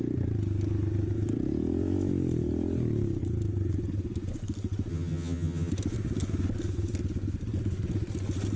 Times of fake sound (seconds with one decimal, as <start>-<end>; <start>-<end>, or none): 4.9-5.7